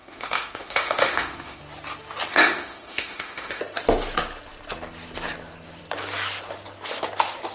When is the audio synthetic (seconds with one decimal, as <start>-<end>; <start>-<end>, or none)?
0.0-1.6; 2.3-3.6